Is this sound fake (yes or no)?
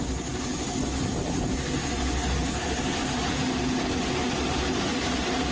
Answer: no